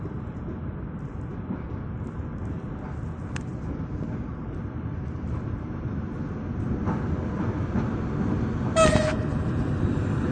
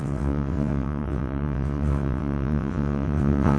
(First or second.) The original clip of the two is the first